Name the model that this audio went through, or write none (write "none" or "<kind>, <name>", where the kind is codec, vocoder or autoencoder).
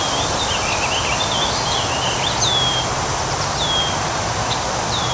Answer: none